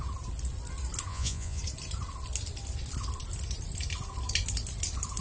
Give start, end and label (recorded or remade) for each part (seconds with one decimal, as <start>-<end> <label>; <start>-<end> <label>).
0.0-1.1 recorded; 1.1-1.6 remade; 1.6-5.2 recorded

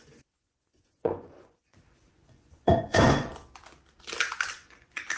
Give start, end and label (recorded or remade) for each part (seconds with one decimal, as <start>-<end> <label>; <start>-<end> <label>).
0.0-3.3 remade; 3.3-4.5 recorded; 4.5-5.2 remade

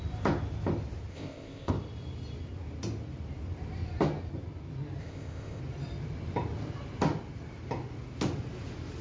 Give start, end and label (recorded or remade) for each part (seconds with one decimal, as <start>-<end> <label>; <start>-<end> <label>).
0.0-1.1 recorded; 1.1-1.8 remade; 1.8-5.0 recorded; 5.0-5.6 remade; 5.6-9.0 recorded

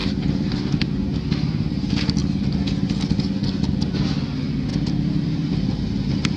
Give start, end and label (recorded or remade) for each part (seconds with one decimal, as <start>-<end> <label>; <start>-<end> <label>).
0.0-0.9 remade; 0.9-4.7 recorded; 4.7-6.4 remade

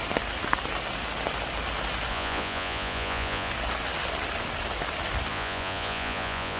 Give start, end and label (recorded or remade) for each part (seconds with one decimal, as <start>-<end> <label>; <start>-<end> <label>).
0.0-2.1 recorded; 2.1-3.5 remade; 3.5-5.3 recorded; 5.3-6.6 remade